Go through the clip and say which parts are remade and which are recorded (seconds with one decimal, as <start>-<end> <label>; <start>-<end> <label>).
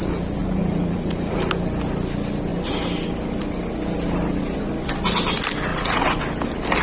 0.0-0.4 recorded; 0.4-1.5 remade; 1.5-5.7 recorded; 5.7-6.2 remade; 6.2-6.8 recorded